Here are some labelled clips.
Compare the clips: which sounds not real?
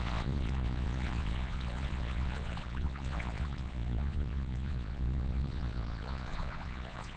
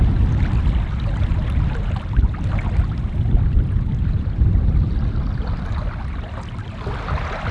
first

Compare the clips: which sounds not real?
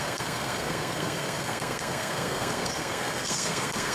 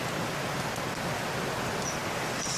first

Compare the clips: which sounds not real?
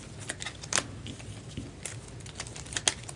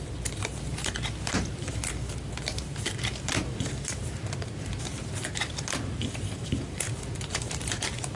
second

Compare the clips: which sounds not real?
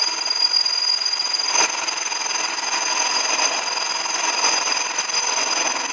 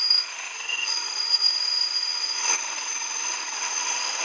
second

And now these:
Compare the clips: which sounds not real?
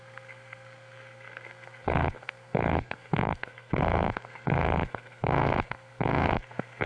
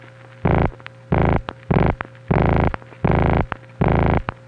first